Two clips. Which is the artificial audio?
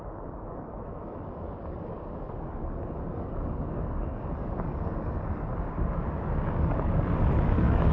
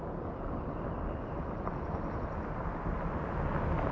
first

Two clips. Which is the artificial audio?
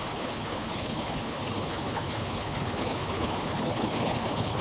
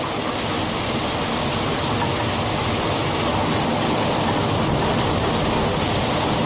first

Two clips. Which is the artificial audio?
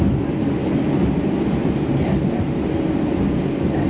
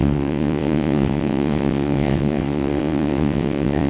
second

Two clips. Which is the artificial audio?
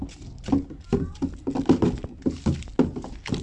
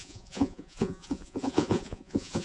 second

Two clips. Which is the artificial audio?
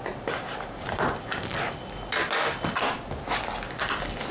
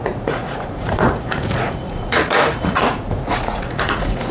second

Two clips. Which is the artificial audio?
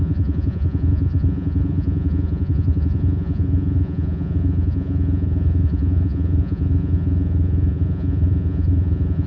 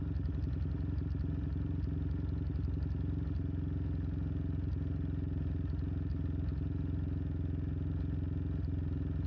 first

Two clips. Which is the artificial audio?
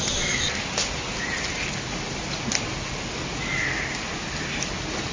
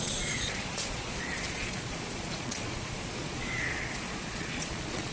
second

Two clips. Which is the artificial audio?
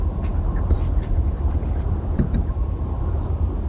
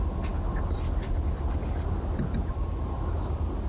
first